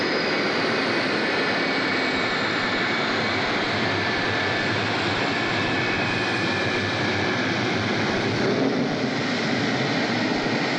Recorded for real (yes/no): no